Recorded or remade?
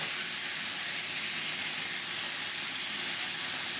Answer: recorded